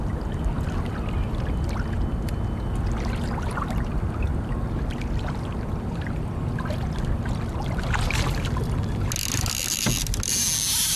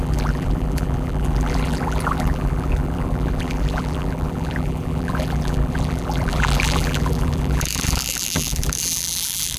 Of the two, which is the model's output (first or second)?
second